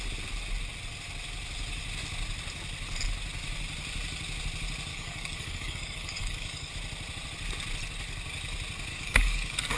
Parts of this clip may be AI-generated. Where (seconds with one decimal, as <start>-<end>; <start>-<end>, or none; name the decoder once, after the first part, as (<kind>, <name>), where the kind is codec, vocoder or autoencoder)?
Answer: 4.9-6.7 (codec, DAC); 8.9-9.8